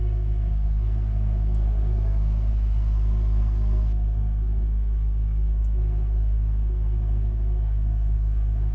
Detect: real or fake fake